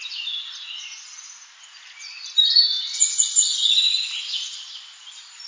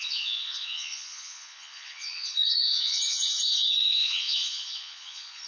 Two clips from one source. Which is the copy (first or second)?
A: second